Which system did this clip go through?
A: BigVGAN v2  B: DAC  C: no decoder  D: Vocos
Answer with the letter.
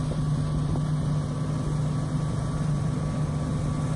C